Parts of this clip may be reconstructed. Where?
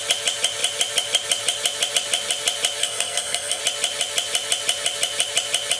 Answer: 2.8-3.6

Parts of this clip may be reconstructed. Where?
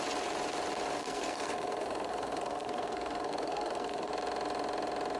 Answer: 1.0-4.1